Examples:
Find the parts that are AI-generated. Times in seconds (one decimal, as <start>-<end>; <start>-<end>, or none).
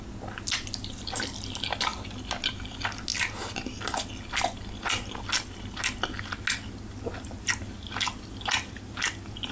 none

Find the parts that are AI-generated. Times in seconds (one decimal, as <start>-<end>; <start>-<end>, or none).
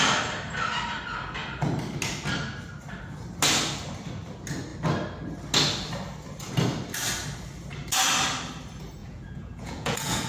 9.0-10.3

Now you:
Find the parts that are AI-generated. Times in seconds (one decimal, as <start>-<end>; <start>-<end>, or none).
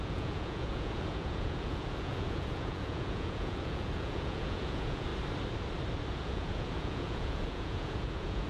0.0-5.1; 6.1-8.5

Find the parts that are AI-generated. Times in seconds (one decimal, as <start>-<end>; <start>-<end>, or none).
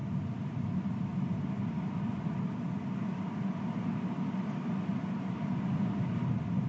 none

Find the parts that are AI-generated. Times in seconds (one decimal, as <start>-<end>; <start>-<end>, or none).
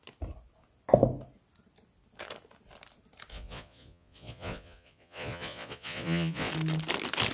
3.3-6.5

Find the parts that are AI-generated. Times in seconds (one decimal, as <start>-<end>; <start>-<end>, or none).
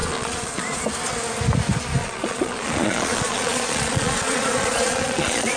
0.0-0.8; 2.0-5.6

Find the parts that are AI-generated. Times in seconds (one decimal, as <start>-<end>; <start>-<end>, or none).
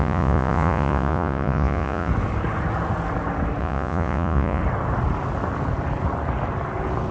0.0-2.1; 3.6-4.6